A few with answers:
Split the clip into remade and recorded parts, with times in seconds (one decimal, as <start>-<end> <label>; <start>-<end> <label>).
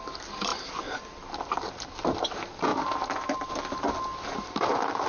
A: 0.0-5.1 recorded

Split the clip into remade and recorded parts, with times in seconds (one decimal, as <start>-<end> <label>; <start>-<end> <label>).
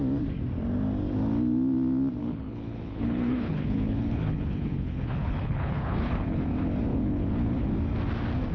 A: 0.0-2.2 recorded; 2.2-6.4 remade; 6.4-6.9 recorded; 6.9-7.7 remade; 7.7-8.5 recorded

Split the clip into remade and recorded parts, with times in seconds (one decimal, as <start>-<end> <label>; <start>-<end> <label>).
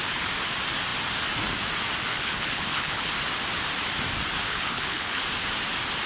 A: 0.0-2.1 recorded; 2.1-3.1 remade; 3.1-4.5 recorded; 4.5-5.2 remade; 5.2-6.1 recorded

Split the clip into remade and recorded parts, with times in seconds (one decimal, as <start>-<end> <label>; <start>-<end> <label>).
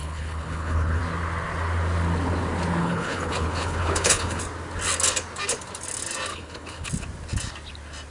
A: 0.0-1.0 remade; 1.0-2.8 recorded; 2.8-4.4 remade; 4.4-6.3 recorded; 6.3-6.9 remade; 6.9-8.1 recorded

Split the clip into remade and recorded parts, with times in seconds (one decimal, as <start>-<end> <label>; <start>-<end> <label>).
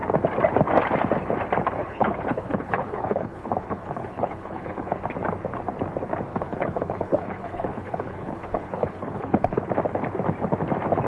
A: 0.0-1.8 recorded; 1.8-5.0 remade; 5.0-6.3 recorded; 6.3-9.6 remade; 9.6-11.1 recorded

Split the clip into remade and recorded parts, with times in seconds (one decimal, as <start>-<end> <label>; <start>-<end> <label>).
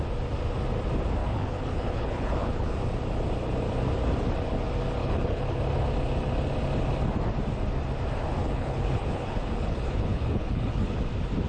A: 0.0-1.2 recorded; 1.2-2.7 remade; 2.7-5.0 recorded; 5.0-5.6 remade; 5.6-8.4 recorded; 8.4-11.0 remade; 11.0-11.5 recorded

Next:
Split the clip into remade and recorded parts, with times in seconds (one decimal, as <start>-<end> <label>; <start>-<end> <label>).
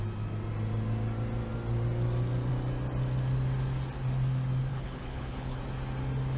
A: 0.0-4.7 recorded; 4.7-5.6 remade; 5.6-6.4 recorded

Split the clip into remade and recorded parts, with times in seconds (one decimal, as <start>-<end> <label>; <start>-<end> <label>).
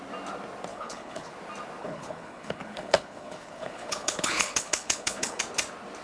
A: 0.0-0.7 recorded; 0.7-1.3 remade; 1.3-1.8 recorded; 1.8-5.4 remade; 5.4-6.0 recorded